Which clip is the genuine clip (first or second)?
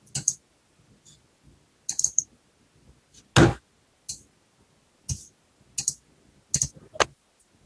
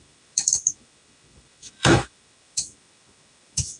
first